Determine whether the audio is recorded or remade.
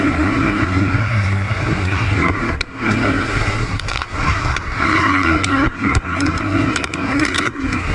remade